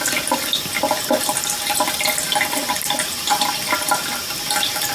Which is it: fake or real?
real